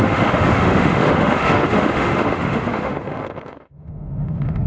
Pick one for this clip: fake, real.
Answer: fake